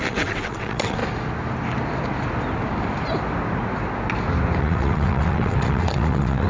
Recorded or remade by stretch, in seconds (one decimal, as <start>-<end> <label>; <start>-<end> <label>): 0.0-1.0 remade; 1.0-4.6 recorded; 4.6-6.5 remade